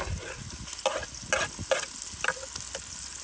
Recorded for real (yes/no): yes